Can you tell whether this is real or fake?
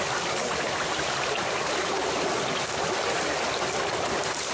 real